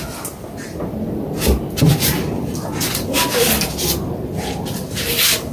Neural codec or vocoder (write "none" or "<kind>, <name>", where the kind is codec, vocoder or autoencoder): none